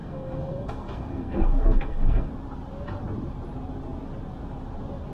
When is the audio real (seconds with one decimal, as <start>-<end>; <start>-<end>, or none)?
2.3-5.1

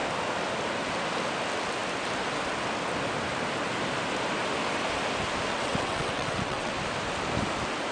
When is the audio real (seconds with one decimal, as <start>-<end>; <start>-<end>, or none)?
0.0-5.5; 6.7-7.9

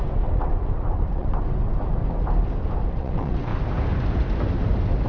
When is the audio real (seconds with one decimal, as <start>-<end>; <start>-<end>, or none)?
1.6-2.9; 3.5-5.1

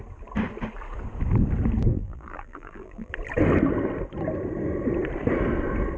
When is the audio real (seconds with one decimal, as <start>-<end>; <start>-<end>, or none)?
0.0-1.9; 3.1-6.0